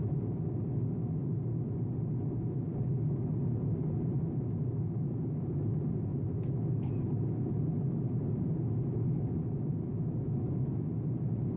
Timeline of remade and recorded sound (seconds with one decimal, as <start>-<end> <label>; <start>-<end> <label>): 0.0-6.1 recorded; 6.1-6.9 remade; 6.9-11.6 recorded